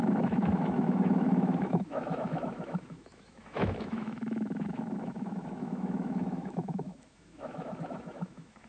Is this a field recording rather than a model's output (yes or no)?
no